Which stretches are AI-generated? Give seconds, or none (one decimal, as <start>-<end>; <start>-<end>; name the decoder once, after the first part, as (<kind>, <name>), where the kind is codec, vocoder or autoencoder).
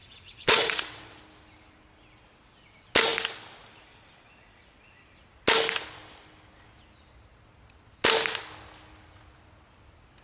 0.0-1.2 (vocoder, WaveNeXt)